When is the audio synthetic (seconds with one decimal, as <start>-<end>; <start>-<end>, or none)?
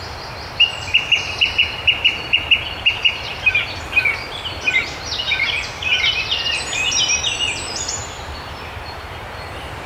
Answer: 0.7-4.7; 8.0-9.9